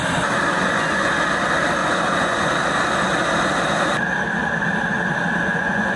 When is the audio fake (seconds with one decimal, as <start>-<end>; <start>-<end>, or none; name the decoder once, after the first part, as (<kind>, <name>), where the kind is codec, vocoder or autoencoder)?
0.5-1.1 (vocoder, Vocos); 1.8-2.5; 5.4-6.0

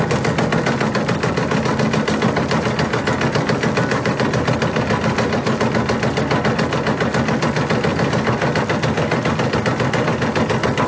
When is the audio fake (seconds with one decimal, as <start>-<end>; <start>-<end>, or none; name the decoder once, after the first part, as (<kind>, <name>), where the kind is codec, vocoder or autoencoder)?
none